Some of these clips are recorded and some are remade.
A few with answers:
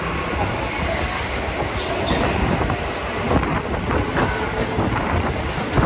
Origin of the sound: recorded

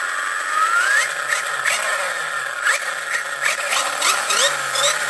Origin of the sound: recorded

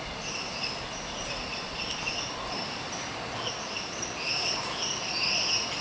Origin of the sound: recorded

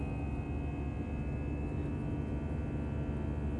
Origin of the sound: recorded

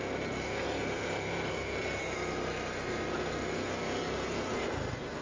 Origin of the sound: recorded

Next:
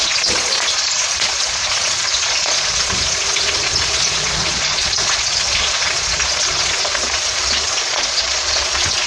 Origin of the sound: remade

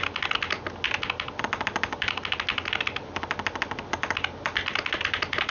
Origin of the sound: recorded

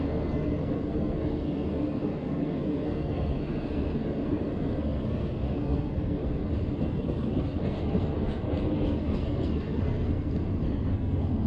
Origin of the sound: remade